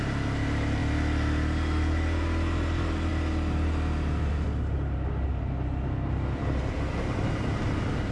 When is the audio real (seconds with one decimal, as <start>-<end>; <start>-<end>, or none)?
0.0-8.1